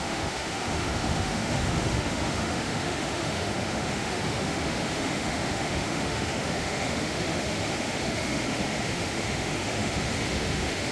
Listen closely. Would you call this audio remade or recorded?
remade